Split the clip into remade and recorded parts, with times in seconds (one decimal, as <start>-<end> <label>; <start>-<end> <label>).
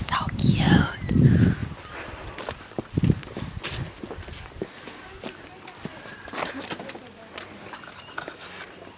0.0-0.5 recorded; 0.5-1.1 remade; 1.1-1.6 recorded; 1.6-3.1 remade; 3.1-5.9 recorded; 5.9-8.0 remade; 8.0-9.0 recorded